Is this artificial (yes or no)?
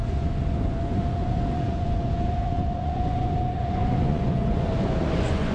yes